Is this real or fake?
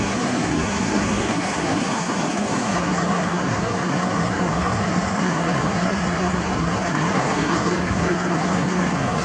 fake